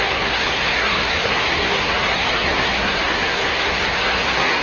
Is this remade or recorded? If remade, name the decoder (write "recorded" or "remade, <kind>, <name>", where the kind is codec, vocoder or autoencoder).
remade, codec, SNAC